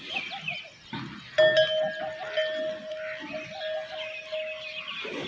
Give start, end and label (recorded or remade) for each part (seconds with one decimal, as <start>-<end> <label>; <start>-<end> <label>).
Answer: 0.0-5.3 recorded